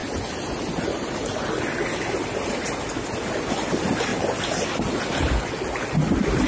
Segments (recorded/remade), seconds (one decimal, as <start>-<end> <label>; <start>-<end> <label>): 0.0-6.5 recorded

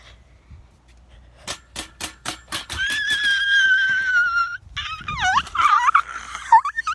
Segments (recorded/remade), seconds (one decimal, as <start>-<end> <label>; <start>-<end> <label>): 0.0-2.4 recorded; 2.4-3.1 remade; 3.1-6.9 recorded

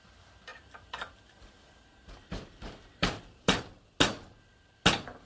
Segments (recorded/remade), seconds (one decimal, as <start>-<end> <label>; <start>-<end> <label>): 0.0-0.5 recorded; 0.5-3.7 remade; 3.7-5.3 recorded